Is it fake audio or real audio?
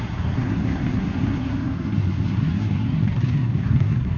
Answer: fake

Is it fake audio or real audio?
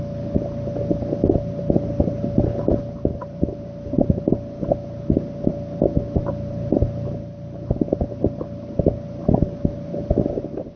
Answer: real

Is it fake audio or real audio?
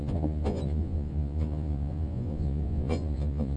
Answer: fake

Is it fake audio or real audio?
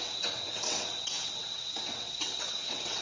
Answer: fake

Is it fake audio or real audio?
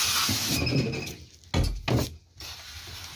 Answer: real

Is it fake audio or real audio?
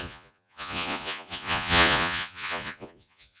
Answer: fake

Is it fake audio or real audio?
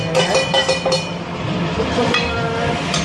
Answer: real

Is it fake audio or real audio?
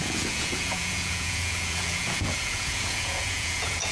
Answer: fake